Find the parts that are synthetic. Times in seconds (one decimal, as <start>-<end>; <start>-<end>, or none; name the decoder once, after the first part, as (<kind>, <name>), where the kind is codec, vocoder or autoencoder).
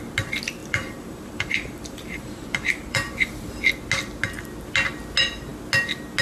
0.6-3.6 (vocoder, BigVGAN v2)